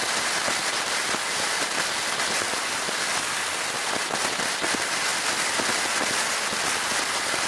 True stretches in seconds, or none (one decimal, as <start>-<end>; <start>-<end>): 0.0-7.5